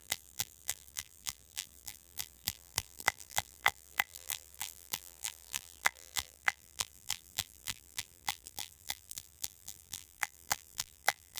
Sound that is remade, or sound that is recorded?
remade